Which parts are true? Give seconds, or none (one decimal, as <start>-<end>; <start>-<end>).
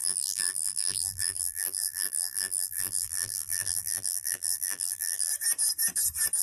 5.3-6.4